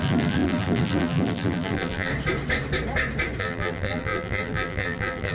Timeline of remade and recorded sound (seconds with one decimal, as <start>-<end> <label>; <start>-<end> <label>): 0.0-2.1 remade; 2.1-3.4 recorded; 3.4-5.3 remade